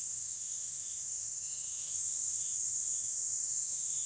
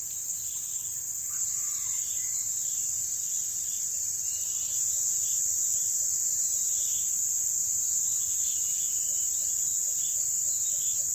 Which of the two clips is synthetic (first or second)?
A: first